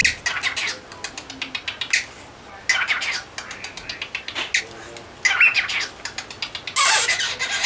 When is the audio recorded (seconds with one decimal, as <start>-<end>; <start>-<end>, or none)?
0.0-7.7